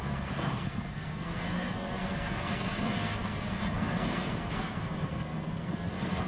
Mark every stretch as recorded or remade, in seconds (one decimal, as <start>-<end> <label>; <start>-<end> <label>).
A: 0.0-6.3 remade